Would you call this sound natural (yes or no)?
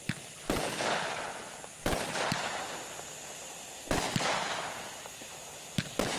yes